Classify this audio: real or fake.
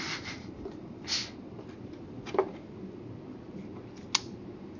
real